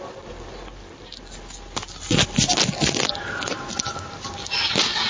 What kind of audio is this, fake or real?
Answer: real